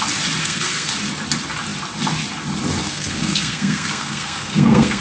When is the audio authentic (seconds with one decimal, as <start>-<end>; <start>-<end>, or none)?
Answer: 0.0-0.4; 0.9-2.8